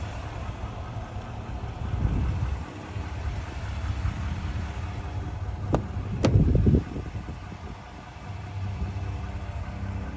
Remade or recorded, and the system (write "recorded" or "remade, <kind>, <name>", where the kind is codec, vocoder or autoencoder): recorded